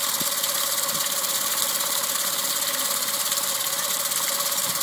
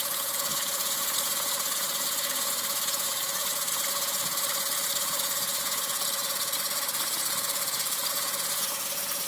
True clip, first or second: first